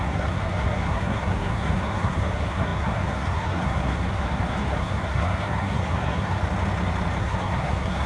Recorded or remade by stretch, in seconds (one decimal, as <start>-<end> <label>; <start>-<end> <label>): 0.0-6.4 remade; 6.4-7.2 recorded; 7.2-8.1 remade